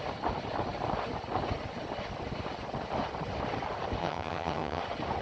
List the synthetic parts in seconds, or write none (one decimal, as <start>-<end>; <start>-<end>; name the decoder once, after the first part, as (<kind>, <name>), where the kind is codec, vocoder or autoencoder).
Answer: 4.0-4.8 (vocoder, HiFi-GAN)